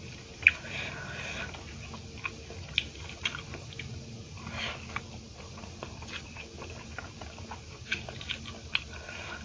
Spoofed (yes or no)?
no